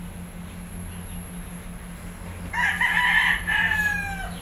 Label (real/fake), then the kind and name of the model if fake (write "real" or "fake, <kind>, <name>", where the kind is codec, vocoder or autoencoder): real